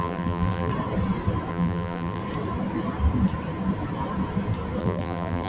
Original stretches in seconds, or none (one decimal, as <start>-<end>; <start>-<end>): 0.7-1.5; 2.2-4.8